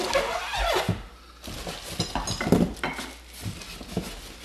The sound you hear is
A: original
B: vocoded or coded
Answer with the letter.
A